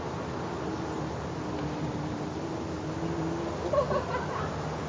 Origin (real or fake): real